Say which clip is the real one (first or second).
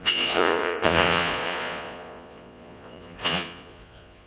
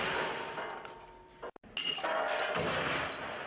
second